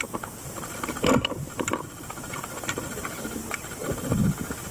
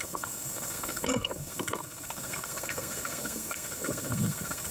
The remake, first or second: second